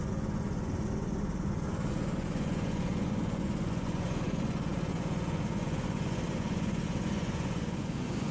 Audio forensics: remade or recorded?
remade